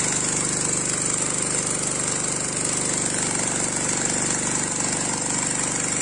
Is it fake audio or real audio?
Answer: real